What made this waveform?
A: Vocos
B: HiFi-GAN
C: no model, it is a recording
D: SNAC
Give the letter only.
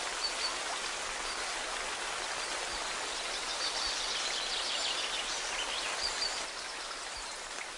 C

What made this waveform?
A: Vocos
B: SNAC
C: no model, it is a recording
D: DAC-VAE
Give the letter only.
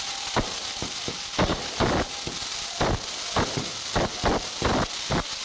C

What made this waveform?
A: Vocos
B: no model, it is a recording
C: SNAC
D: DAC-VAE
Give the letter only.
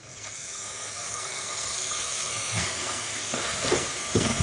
C